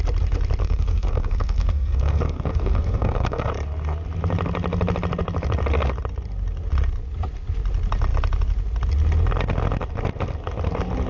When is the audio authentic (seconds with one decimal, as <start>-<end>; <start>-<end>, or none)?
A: 0.0-0.6; 3.5-11.1